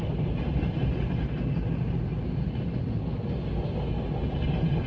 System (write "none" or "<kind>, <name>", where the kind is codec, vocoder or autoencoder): none